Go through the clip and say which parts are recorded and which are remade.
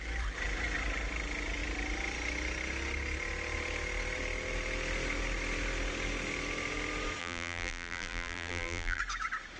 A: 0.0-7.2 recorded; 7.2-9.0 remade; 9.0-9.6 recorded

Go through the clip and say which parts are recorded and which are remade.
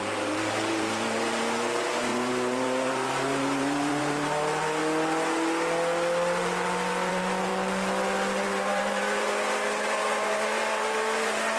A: 0.0-4.8 remade; 4.8-7.1 recorded; 7.1-7.5 remade; 7.5-8.5 recorded; 8.5-11.6 remade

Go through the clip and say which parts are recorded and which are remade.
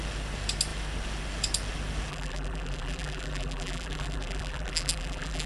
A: 0.0-2.1 recorded; 2.1-5.5 remade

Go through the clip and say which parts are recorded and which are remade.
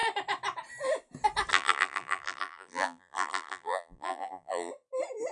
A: 0.0-1.5 recorded; 1.5-4.7 remade; 4.7-5.3 recorded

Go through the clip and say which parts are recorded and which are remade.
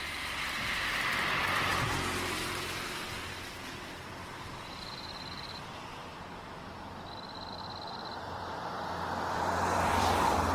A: 0.0-1.7 remade; 1.7-4.9 recorded; 4.9-6.0 remade; 6.0-7.1 recorded; 7.1-10.5 remade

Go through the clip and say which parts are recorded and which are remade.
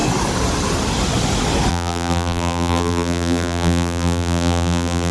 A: 0.0-1.7 recorded; 1.7-5.1 remade